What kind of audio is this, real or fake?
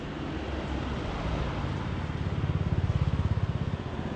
real